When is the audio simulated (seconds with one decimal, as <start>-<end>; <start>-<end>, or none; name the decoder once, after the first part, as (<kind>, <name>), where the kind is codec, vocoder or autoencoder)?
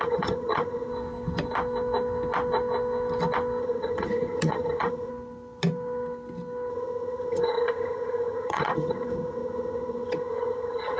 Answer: 0.0-0.9 (vocoder, HiFi-GAN); 3.6-5.1; 6.7-11.0